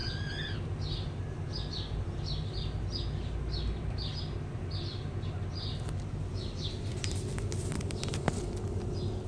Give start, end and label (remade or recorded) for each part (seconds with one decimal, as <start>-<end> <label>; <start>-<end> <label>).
0.0-9.3 recorded